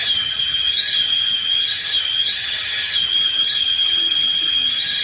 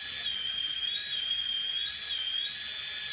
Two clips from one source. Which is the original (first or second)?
second